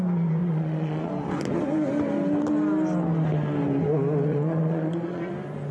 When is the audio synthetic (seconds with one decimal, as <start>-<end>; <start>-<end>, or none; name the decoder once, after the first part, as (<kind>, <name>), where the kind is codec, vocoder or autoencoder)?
0.4-1.1 (vocoder, Vocos); 4.3-5.3